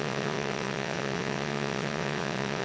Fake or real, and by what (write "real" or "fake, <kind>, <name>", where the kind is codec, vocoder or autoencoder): fake, vocoder, WaveNeXt